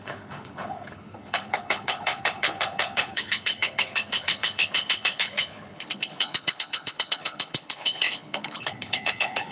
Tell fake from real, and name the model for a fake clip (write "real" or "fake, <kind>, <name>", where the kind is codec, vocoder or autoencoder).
fake, codec, HILCodec